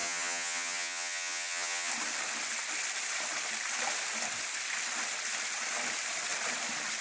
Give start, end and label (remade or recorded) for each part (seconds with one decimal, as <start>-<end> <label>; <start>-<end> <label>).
0.0-1.9 remade; 1.9-7.0 recorded